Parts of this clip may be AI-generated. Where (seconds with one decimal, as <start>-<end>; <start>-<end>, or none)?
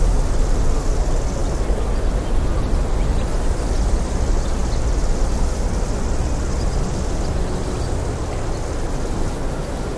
none